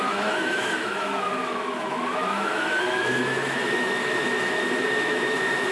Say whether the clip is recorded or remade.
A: remade